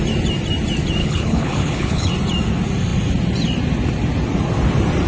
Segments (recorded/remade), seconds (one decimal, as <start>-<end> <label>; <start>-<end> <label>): 0.0-1.0 recorded; 1.0-2.1 remade; 2.1-5.1 recorded